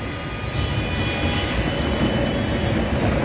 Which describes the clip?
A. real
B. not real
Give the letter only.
A